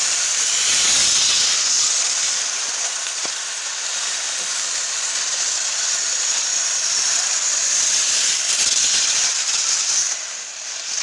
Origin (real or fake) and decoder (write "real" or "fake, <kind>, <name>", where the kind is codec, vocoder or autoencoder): fake, vocoder, BigVGAN v2